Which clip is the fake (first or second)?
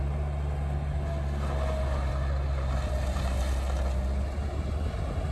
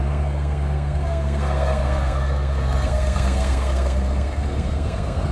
second